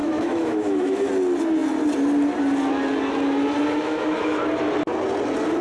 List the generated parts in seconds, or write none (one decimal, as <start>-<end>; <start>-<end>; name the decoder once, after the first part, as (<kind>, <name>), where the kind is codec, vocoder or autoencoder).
0.0-1.1 (autoencoder, DAC-VAE); 3.7-4.4